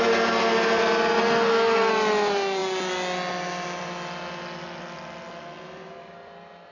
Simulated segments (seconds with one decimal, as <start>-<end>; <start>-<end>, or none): 1.2-1.9